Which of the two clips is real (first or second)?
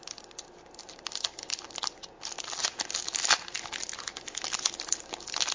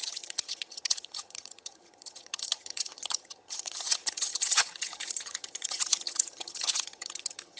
first